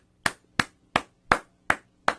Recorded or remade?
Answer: recorded